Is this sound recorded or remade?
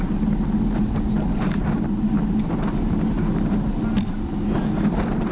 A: recorded